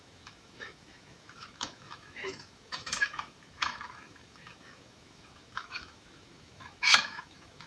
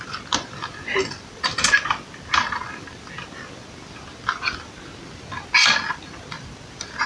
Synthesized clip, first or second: first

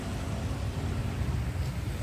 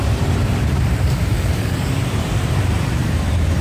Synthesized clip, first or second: second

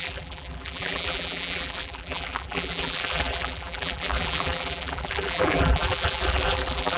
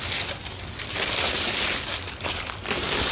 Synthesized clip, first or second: first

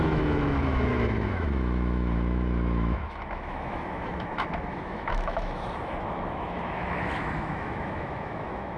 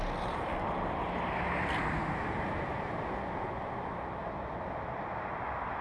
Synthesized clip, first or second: first